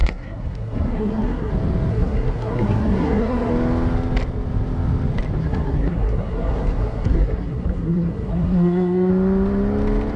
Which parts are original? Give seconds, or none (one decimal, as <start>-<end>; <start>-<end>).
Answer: 1.5-1.9; 3.5-5.4; 9.1-10.2